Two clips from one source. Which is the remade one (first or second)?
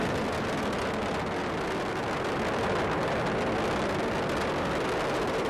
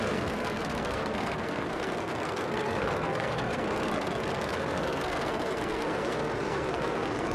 second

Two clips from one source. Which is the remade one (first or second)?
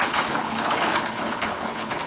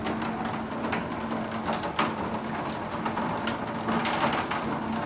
first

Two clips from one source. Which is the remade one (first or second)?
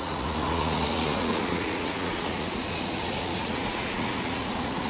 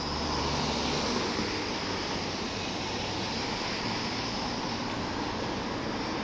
first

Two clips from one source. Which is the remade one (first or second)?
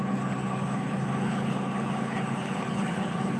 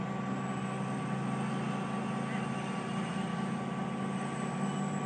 first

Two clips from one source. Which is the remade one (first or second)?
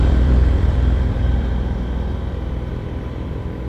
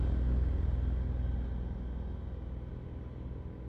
first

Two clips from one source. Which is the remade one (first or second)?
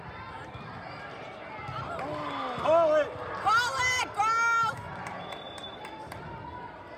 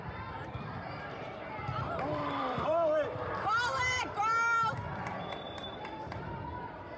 second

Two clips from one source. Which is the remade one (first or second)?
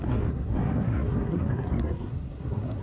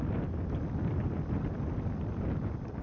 first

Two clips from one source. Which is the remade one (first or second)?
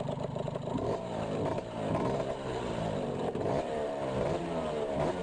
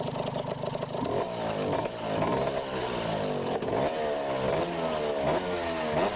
first